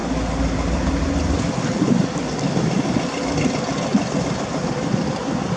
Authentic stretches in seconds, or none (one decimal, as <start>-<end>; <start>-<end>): 0.0-5.6